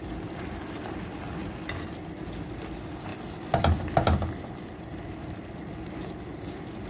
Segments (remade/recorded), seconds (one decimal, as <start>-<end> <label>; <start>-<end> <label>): 0.0-6.9 recorded